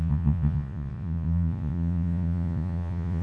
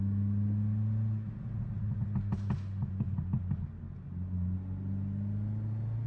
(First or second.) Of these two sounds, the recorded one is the second